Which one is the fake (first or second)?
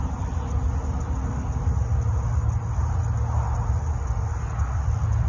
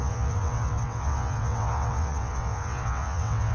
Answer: second